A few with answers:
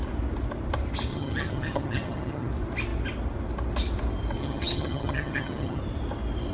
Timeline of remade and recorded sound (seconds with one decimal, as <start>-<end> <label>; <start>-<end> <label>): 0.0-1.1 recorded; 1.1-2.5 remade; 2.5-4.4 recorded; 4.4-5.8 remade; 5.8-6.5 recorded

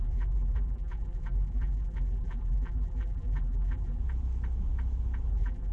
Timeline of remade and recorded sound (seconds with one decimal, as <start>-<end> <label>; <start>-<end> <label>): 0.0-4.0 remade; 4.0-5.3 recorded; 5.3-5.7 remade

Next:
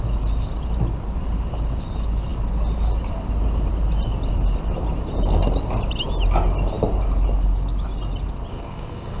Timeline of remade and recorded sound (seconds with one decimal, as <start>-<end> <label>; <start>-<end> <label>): 0.0-8.5 recorded; 8.5-9.2 remade

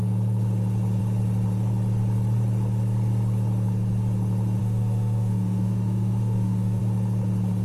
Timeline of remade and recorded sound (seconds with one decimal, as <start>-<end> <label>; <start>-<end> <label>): 0.0-4.6 recorded; 4.6-6.8 remade; 6.8-7.6 recorded